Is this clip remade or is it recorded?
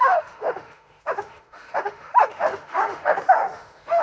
remade